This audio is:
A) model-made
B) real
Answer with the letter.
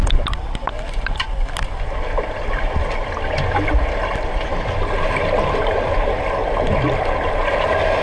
B